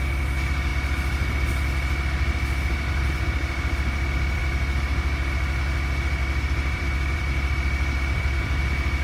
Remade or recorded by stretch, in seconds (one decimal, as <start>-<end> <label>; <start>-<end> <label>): 0.0-6.2 recorded; 6.2-8.6 remade; 8.6-9.0 recorded

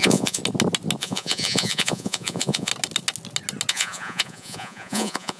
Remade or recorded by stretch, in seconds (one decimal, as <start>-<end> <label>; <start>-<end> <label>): 0.0-0.4 remade; 0.4-1.0 recorded; 1.0-2.7 remade; 2.7-3.7 recorded; 3.7-5.4 remade

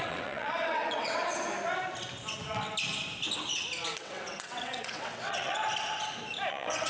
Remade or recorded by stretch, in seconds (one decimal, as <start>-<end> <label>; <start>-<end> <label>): 0.0-1.2 remade; 1.2-4.0 recorded; 4.0-5.6 remade; 5.6-6.5 recorded; 6.5-6.9 remade

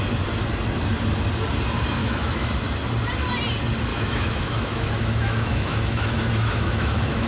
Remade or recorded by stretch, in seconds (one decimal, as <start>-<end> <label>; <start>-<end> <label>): 0.0-2.0 recorded; 2.0-2.5 remade; 2.5-3.9 recorded; 3.9-7.3 remade

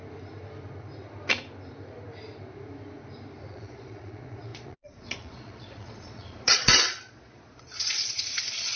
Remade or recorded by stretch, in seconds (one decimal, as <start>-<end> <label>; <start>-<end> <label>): 0.0-3.5 recorded; 3.5-8.8 remade